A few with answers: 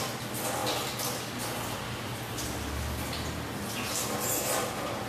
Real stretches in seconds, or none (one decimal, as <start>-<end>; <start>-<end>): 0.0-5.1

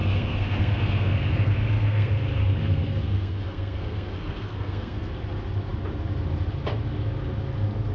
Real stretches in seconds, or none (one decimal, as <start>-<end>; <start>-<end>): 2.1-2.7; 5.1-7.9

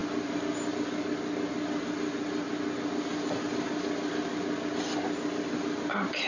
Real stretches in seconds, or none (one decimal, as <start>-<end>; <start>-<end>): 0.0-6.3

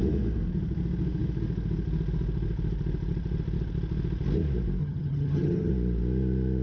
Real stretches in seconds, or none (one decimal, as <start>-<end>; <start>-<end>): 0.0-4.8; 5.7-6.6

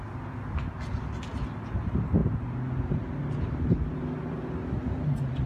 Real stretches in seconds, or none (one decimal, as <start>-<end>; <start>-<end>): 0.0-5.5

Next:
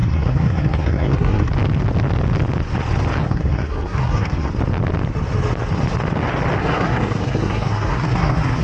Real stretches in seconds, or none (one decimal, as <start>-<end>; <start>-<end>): 1.5-3.2; 4.5-6.6

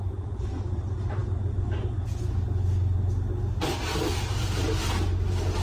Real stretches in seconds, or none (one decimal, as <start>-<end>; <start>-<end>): 0.0-5.6

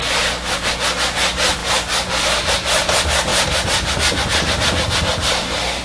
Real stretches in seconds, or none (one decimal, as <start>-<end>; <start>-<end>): 0.0-5.8